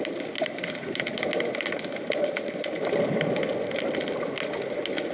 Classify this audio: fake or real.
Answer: real